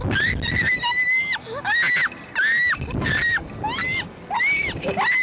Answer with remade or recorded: recorded